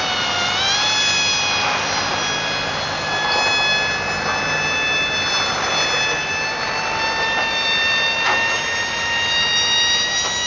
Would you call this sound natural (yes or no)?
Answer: yes